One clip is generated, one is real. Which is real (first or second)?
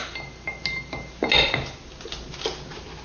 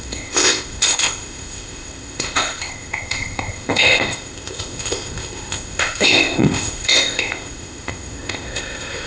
first